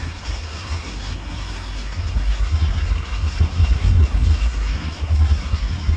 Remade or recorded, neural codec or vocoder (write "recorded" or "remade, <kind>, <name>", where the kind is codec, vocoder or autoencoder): remade, codec, SNAC